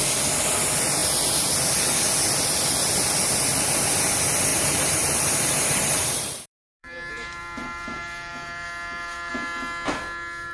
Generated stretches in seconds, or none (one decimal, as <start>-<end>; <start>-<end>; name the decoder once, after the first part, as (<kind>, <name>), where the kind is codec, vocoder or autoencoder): 4.5-9.3 (vocoder, BigVGAN v2)